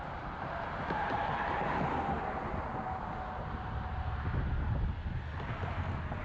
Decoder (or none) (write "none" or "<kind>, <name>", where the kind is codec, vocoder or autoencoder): none